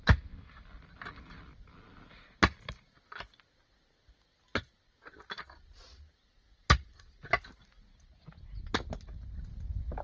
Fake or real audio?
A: real